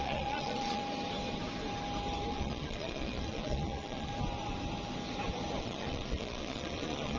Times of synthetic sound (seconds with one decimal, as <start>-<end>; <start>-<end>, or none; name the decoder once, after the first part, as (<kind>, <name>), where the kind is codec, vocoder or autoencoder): 0.0-0.8 (vocoder, Vocos); 2.3-4.1; 5.6-7.2